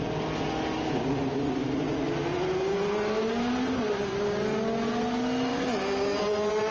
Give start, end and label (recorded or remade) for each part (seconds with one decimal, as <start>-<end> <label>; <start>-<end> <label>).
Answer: 0.0-6.7 recorded